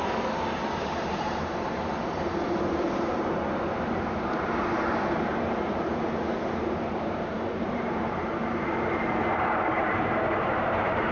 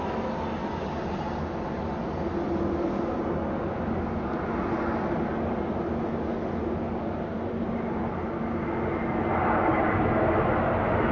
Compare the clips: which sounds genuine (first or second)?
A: second